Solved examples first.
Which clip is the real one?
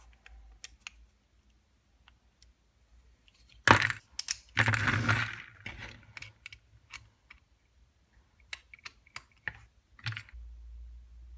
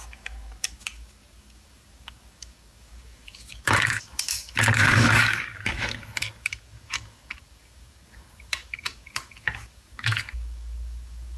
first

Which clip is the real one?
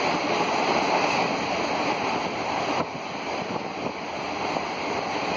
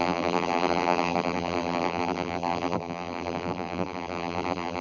first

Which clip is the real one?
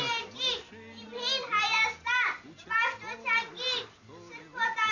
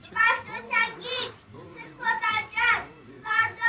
first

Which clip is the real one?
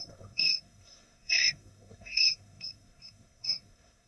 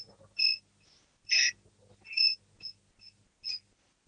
second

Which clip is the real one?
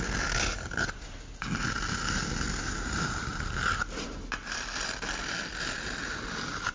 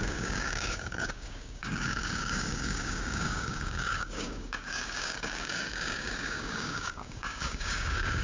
first